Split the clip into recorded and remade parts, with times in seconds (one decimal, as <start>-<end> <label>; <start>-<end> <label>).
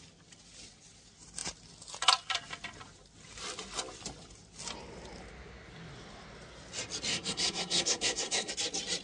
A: 0.0-7.1 recorded; 7.1-8.5 remade; 8.5-9.0 recorded